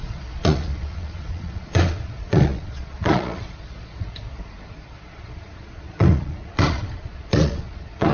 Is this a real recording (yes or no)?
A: no